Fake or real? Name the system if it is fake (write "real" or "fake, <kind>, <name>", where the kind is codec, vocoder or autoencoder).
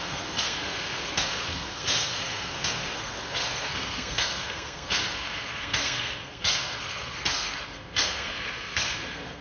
fake, codec, SNAC